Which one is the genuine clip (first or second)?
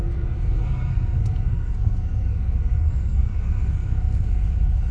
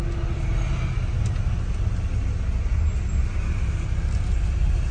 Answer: second